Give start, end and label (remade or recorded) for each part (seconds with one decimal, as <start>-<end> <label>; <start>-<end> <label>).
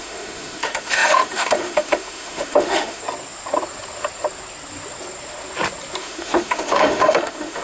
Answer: 0.0-3.0 remade; 3.0-6.0 recorded; 6.0-7.6 remade